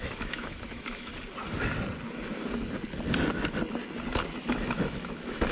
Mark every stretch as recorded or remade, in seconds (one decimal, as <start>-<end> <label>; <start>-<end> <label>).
0.0-1.1 remade; 1.1-4.4 recorded; 4.4-5.5 remade